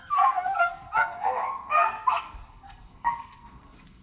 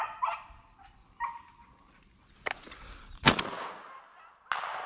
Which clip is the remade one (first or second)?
first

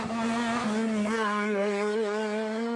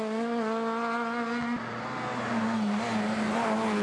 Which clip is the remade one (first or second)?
first